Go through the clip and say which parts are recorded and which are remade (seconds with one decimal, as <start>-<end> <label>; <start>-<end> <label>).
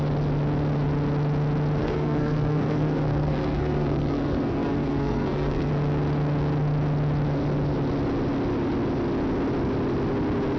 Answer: 0.0-1.8 recorded; 1.8-5.7 remade; 5.7-10.6 recorded